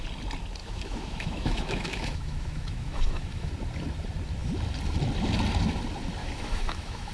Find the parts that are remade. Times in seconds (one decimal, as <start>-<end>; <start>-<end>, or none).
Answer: 0.6-3.5; 6.2-7.1